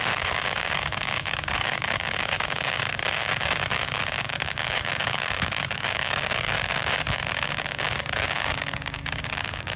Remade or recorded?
remade